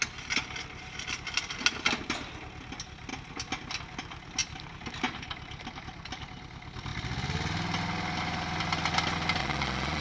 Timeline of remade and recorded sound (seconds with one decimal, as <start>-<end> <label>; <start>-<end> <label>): 0.0-9.4 recorded; 9.4-10.0 remade